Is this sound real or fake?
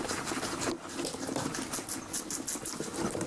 real